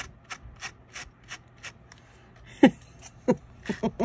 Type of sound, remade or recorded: recorded